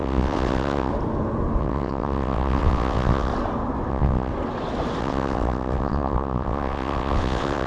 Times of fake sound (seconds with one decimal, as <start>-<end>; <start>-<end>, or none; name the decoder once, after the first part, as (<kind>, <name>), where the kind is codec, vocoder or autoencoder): 0.0-0.9 (vocoder, WaveNeXt); 1.6-3.3; 3.9-4.3; 5.0-7.7